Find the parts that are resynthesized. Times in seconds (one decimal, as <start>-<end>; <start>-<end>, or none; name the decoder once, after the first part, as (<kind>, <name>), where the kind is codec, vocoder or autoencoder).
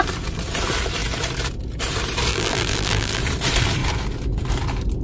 2.3-3.2 (vocoder, BigVGAN v2)